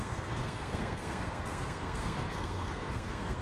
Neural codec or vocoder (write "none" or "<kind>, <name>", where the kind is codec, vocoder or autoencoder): codec, SNAC